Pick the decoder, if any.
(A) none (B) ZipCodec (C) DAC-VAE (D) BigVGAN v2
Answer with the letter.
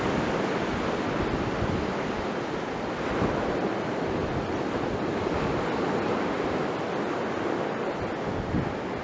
A